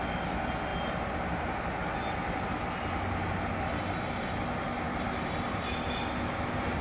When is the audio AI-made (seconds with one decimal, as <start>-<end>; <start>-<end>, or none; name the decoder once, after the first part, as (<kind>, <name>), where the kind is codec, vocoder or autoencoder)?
none